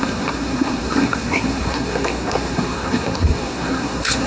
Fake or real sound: fake